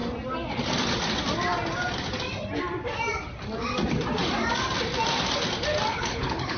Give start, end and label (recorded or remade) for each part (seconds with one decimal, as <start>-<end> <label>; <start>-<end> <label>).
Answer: 0.0-5.9 recorded; 5.9-6.6 remade